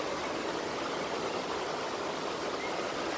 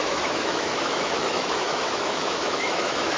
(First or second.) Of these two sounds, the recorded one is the first